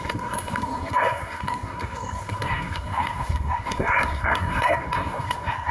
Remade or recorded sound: remade